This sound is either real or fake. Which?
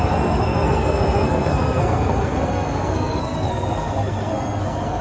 fake